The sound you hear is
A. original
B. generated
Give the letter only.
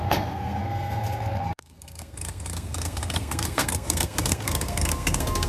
B